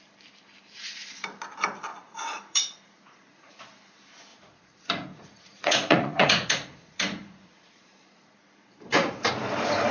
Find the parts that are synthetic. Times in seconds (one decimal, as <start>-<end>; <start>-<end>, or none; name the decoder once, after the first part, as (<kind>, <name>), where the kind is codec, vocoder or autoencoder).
1.9-3.6 (vocoder, Vocos); 4.3-8.3